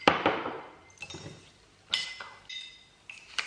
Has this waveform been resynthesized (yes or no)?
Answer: no